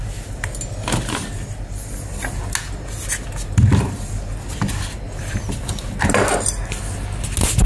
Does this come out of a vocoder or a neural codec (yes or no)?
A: no